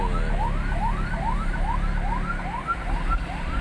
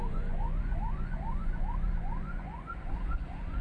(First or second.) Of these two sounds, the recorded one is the first